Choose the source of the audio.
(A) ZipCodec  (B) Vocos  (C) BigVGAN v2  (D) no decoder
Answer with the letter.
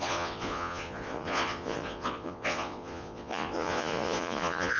B